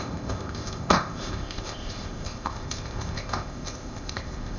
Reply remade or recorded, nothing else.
remade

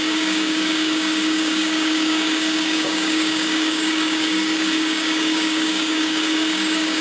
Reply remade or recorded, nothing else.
remade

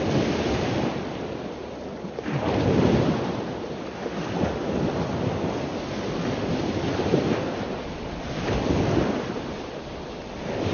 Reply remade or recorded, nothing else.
recorded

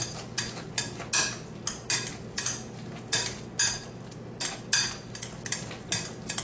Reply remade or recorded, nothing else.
recorded